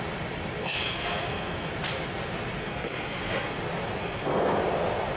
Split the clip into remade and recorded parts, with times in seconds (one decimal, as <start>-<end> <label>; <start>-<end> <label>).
0.0-0.6 recorded; 0.6-1.7 remade; 1.7-2.6 recorded; 2.6-3.6 remade; 3.6-4.0 recorded; 4.0-4.6 remade; 4.6-5.2 recorded